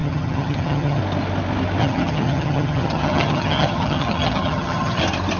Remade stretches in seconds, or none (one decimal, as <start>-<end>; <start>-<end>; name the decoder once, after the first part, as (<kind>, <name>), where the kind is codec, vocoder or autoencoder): 0.0-1.0 (vocoder, HiFi-GAN); 1.8-5.0